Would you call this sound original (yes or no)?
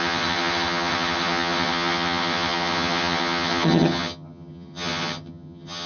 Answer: no